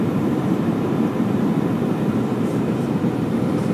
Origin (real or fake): fake